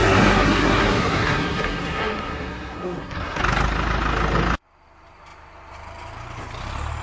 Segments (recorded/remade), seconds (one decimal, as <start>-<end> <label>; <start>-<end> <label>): 0.0-3.4 remade; 3.4-7.0 recorded

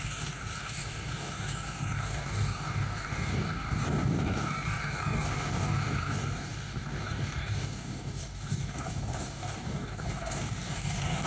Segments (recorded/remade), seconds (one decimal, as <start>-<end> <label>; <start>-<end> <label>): 0.0-11.3 remade